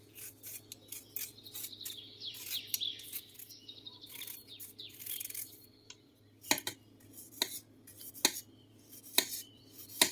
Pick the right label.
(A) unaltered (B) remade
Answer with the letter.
A